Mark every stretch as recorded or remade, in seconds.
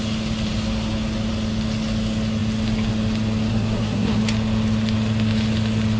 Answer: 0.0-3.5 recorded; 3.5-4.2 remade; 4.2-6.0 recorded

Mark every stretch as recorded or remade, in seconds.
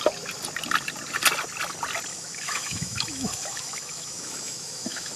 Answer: 0.0-2.1 recorded; 2.1-5.2 remade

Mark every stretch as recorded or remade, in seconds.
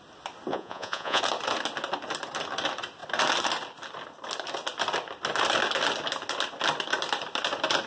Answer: 0.0-0.5 recorded; 0.5-1.2 remade; 1.2-7.9 recorded